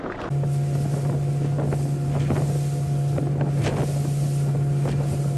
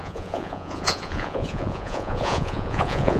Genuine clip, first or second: first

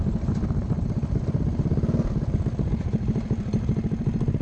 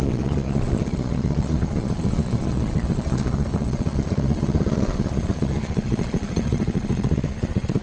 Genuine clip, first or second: first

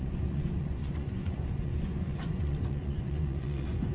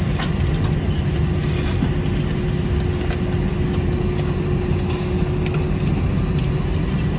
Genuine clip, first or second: second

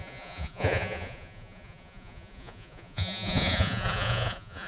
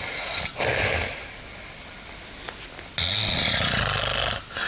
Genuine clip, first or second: second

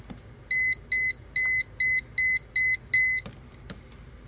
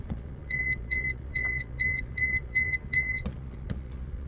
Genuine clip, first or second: first